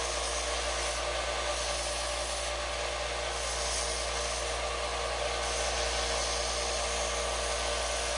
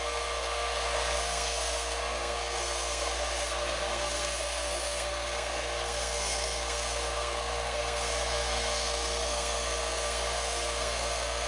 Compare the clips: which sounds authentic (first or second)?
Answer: first